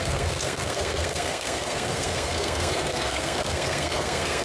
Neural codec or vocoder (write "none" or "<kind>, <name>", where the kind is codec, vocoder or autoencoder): codec, SNAC